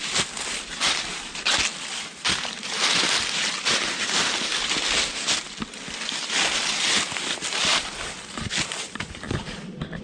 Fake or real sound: real